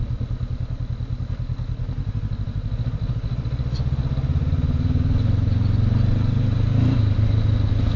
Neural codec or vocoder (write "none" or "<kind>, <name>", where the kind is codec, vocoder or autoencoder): none